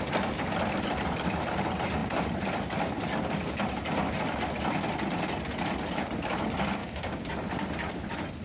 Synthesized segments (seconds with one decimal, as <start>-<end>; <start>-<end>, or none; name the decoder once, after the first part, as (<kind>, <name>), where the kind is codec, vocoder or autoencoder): 6.8-7.3 (codec, DAC)